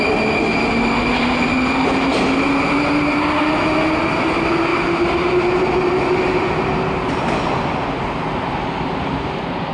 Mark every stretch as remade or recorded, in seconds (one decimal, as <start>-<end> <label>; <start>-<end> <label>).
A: 0.0-9.7 recorded